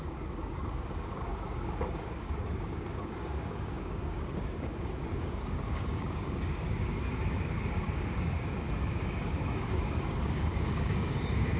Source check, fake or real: fake